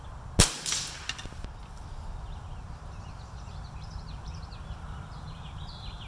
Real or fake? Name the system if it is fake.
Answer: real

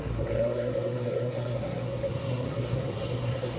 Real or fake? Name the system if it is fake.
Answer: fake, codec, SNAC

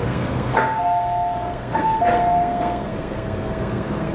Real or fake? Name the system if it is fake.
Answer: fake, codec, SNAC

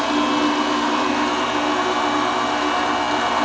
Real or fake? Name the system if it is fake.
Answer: real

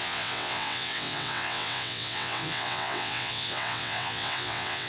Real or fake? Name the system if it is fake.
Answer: fake, vocoder, WaveNeXt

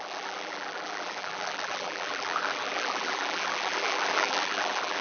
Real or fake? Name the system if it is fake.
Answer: fake, vocoder, BigVGAN v2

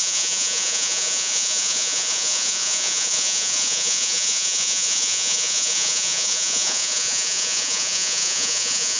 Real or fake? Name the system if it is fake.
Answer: fake, vocoder, Vocos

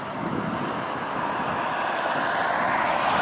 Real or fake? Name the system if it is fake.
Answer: real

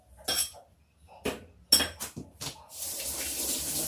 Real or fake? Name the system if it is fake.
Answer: real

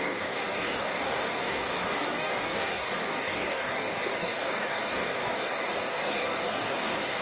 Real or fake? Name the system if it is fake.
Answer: fake, codec, DAC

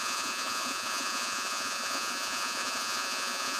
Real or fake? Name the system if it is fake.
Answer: fake, vocoder, Vocos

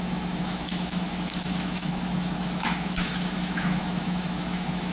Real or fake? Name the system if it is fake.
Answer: fake, autoencoder, DAC-VAE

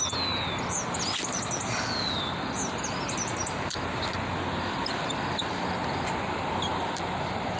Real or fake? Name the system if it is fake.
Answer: real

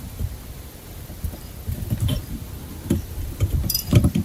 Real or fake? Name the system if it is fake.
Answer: fake, vocoder, BigVGAN v2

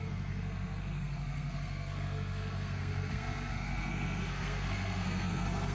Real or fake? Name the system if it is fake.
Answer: fake, codec, SNAC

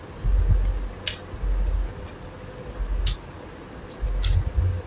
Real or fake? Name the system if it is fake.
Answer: real